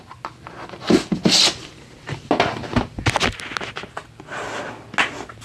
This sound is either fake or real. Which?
real